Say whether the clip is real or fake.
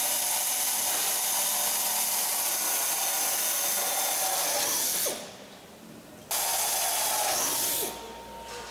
real